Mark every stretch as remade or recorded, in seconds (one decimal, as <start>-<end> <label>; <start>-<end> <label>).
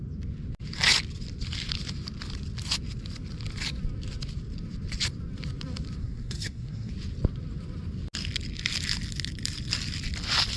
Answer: 0.0-6.0 recorded; 6.0-6.9 remade; 6.9-10.6 recorded